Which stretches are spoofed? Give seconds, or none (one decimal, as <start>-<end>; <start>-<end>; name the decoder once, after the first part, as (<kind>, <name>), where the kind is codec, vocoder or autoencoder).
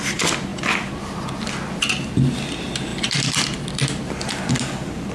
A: 2.9-4.4 (vocoder, BigVGAN v2)